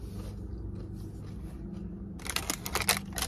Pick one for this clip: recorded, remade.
recorded